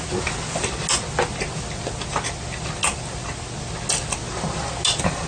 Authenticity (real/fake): real